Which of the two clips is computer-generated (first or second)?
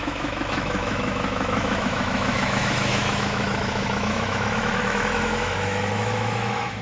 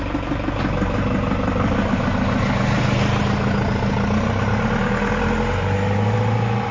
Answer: first